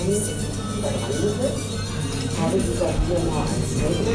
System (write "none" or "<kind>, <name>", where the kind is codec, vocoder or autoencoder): none